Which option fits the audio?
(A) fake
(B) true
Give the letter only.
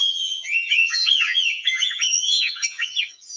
A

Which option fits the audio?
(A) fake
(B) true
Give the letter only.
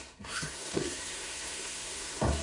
A